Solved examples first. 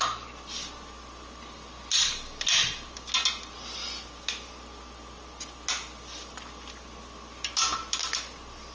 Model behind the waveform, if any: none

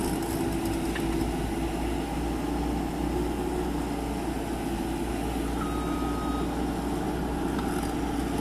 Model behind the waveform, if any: none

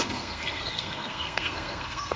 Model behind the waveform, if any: codec, SNAC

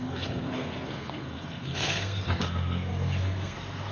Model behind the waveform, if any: codec, SNAC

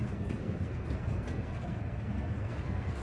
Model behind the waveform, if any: codec, SNAC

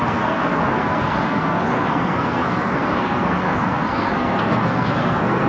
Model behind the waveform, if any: codec, SNAC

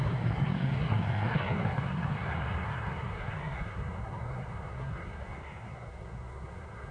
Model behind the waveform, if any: codec, SNAC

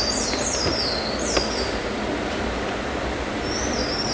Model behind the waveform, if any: none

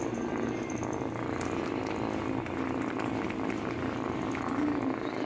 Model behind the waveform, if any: none